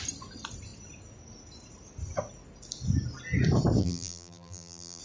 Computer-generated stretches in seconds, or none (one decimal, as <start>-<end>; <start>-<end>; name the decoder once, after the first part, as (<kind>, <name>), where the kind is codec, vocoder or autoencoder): 3.8-5.0 (vocoder, BigVGAN v2)